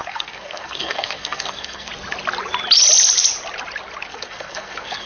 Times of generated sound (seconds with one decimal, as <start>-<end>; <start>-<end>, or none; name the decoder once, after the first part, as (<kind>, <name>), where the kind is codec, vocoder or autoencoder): 0.0-1.9 (codec, SNAC); 4.1-5.1